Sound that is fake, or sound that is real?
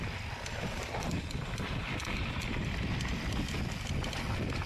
real